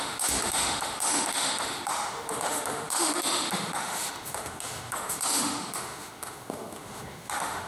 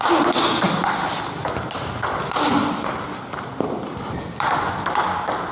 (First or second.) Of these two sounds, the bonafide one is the second